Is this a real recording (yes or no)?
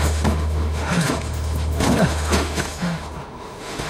no